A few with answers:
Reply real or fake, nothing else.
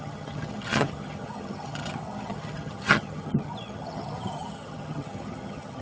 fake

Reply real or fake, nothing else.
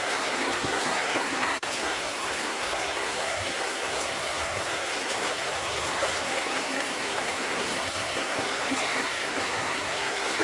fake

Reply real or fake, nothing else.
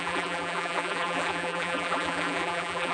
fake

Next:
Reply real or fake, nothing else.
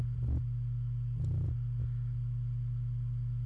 real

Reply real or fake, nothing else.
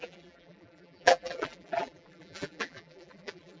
fake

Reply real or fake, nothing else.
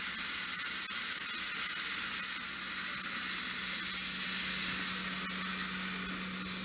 real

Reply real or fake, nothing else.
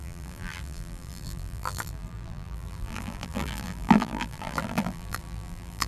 fake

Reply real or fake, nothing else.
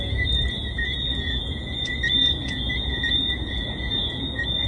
fake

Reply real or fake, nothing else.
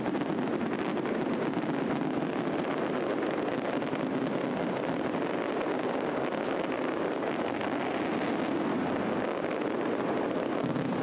real